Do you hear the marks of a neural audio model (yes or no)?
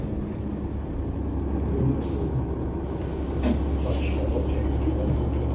no